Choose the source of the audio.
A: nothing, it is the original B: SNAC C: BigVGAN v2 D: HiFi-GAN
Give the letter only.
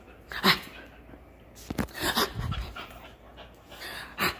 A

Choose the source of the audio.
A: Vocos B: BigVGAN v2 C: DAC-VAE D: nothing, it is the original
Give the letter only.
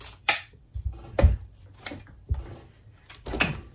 B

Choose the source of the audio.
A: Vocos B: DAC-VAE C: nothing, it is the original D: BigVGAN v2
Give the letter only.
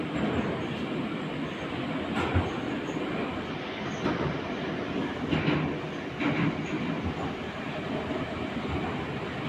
C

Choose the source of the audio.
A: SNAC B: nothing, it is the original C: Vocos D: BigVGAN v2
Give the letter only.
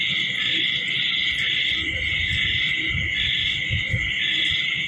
B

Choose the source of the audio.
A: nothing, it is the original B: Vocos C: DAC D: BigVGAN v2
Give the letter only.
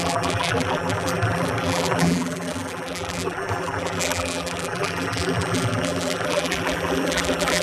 D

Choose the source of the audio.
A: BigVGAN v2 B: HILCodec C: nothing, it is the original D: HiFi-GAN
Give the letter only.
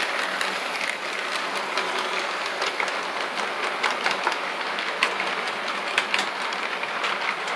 C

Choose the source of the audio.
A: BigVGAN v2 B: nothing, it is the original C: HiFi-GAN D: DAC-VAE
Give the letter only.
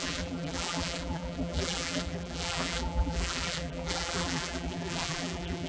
A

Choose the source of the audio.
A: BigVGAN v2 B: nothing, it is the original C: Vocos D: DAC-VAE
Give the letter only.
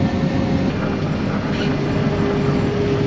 B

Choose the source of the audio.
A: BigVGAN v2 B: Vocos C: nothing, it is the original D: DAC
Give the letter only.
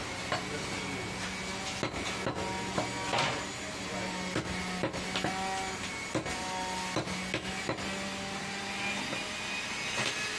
C